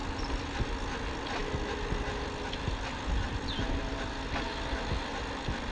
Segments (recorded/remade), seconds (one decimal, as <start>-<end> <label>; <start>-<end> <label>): 0.0-5.7 recorded